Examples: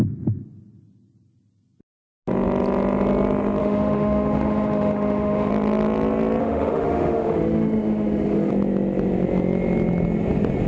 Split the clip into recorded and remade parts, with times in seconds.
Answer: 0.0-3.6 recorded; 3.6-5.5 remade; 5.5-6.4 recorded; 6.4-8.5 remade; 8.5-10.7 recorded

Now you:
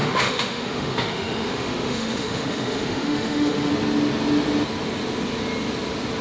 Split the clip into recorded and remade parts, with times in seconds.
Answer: 0.0-3.7 remade; 3.7-6.2 recorded

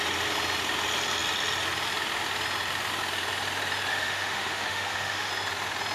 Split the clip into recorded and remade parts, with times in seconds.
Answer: 0.0-3.9 recorded; 3.9-5.3 remade; 5.3-5.9 recorded

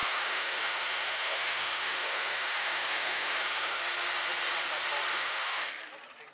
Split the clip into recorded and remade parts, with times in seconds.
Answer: 0.0-3.8 remade; 3.8-5.1 recorded; 5.1-5.7 remade; 5.7-6.3 recorded